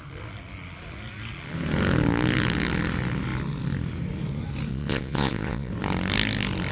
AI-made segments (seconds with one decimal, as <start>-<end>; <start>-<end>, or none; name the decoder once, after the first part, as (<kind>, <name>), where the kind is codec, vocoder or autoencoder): 4.7-5.7 (vocoder, Vocos)